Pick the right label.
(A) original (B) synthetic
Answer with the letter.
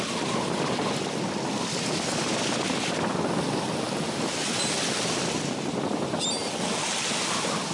A